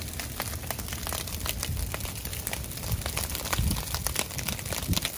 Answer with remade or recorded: recorded